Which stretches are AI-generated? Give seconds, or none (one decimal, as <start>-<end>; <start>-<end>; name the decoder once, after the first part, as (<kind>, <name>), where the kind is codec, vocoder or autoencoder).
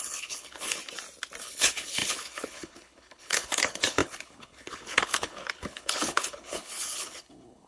0.0-0.8 (codec, HILCodec); 1.4-7.7